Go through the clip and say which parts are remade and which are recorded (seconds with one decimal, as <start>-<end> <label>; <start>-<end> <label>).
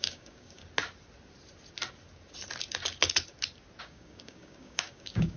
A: 0.0-0.6 remade; 0.6-3.8 recorded; 3.8-5.4 remade